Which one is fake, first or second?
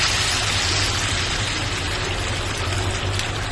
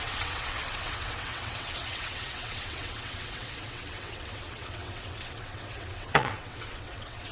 second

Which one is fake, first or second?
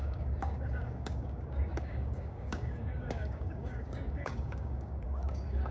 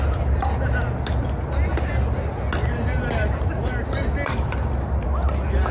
first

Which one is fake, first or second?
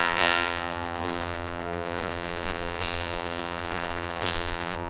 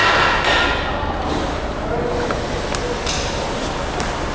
first